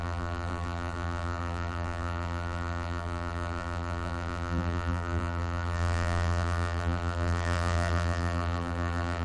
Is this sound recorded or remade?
remade